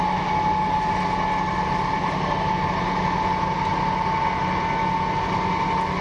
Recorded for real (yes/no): yes